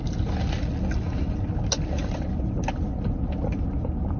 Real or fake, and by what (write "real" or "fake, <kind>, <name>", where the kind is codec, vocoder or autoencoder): real